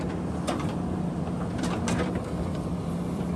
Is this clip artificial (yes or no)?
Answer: no